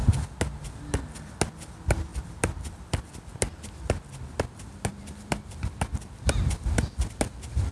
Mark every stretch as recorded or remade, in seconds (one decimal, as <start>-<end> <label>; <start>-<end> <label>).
0.0-2.1 recorded; 2.1-3.5 remade; 3.5-7.7 recorded